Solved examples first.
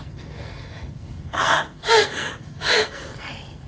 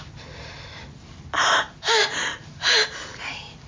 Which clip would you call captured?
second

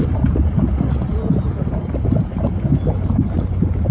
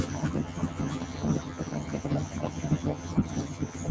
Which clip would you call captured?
first